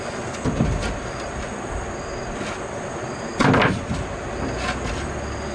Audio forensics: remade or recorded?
recorded